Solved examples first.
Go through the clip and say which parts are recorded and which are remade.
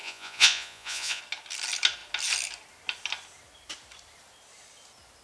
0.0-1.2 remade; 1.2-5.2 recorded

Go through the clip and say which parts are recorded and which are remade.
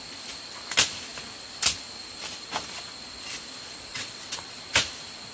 0.0-3.9 recorded; 3.9-4.6 remade; 4.6-5.3 recorded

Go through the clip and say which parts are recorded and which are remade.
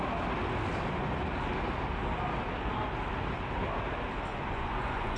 0.0-4.3 recorded; 4.3-5.2 remade